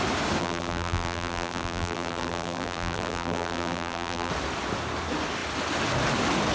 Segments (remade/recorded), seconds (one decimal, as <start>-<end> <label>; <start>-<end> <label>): 0.0-0.4 recorded; 0.4-4.3 remade; 4.3-6.5 recorded